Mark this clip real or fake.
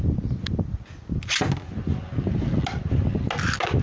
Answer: real